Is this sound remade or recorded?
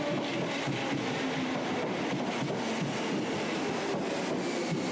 recorded